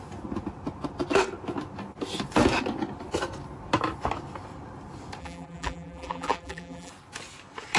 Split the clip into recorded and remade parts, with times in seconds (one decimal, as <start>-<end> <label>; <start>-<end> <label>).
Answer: 0.0-5.2 recorded; 5.2-6.9 remade; 6.9-7.8 recorded